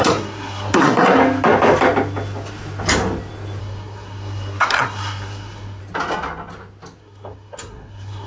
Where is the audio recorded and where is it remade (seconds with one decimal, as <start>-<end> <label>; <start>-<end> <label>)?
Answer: 0.0-1.2 remade; 1.2-3.6 recorded; 3.6-5.8 remade; 5.8-7.0 recorded; 7.0-8.3 remade